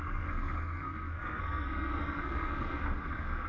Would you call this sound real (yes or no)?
no